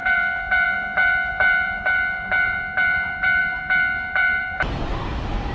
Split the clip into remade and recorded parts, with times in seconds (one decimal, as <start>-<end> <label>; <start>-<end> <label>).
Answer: 0.0-5.5 remade